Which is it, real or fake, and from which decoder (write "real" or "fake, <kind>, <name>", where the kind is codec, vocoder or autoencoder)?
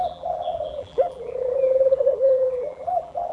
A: fake, vocoder, BigVGAN v2